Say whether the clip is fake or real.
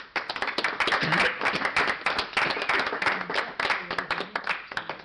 real